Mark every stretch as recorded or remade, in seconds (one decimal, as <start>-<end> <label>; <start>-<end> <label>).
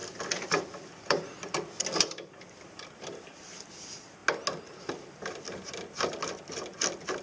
0.0-7.2 recorded